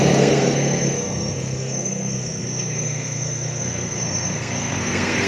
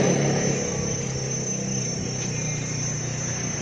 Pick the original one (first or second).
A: second